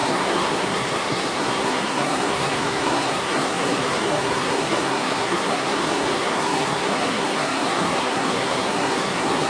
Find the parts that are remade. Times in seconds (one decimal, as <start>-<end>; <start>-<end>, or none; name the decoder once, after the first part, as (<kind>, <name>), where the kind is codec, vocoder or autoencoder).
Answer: 0.0-9.5 (codec, SNAC)